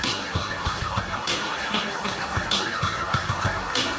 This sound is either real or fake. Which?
fake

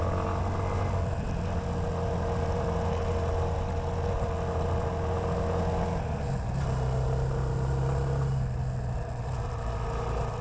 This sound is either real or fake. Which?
real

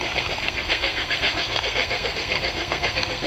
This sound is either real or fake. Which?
fake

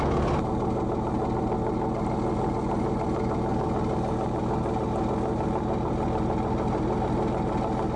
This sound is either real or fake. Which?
real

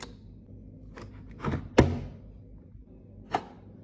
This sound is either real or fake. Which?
real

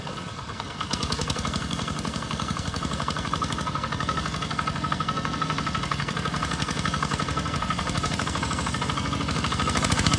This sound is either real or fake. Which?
fake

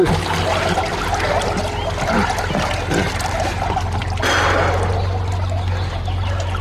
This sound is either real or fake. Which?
real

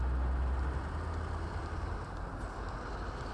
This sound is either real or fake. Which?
real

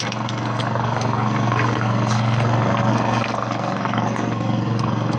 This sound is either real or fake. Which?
fake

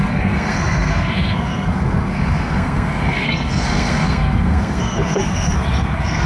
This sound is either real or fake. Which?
fake